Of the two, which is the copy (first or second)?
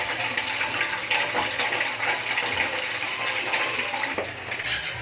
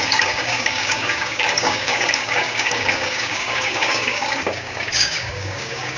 second